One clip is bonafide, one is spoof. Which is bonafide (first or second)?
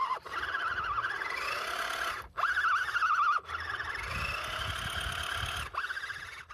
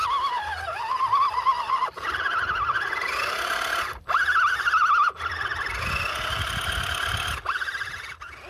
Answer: first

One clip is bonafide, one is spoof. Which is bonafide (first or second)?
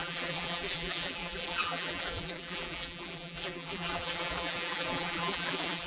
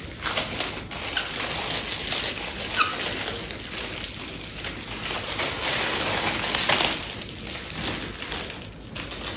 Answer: second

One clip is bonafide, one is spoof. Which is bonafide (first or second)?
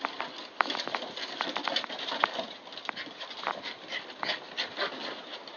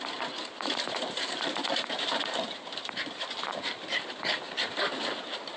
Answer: first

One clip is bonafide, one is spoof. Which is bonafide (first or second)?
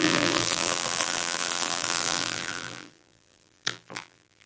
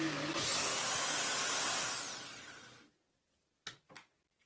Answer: second